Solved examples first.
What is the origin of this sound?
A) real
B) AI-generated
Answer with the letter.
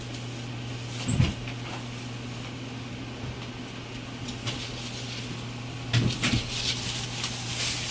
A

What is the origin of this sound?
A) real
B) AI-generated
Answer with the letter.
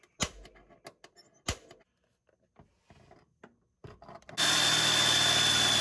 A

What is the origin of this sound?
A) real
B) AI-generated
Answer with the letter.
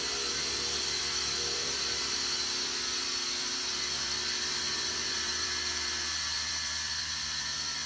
B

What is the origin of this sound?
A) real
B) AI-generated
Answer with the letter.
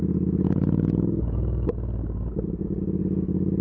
A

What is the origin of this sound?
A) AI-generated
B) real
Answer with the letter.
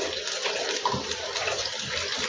A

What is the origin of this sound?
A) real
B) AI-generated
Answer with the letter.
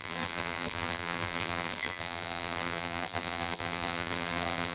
B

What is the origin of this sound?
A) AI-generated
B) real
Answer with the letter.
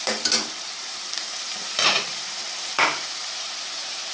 A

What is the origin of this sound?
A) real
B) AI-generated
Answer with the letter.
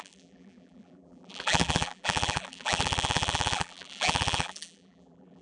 B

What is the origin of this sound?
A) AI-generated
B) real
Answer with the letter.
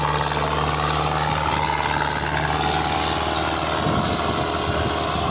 B